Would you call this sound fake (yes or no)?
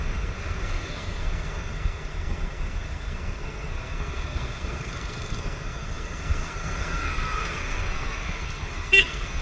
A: yes